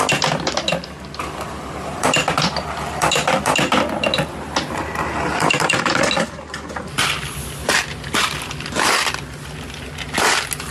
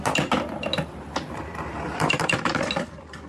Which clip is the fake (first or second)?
second